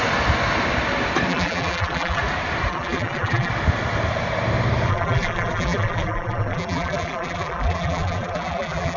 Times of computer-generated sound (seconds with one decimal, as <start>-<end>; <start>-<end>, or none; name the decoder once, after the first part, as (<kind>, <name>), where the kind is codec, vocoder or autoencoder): 1.3-2.2 (vocoder, BigVGAN v2); 2.7-3.5; 4.9-9.0